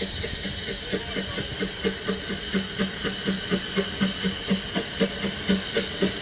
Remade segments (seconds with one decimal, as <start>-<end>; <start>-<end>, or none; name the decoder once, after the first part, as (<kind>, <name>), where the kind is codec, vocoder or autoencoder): none